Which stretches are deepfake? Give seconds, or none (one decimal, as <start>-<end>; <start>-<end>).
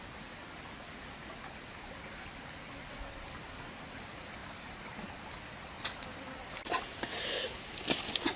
none